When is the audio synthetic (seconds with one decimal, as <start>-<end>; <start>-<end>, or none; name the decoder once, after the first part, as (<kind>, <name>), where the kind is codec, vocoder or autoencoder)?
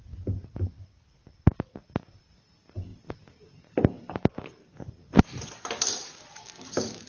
none